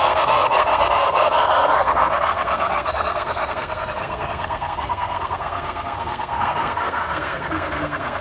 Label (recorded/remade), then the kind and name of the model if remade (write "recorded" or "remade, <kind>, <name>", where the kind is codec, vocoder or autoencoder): remade, codec, SNAC